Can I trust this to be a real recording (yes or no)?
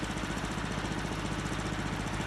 yes